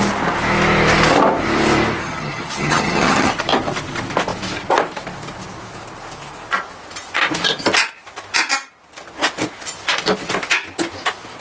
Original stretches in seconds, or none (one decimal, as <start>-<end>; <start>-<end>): 0.0-2.0; 3.3-11.4